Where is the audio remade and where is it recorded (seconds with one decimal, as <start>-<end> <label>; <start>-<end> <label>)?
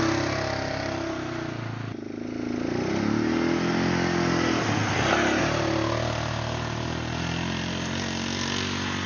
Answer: 0.0-9.1 recorded